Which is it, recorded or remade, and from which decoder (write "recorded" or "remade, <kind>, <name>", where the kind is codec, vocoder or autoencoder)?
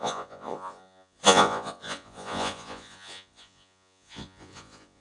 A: remade, vocoder, Vocos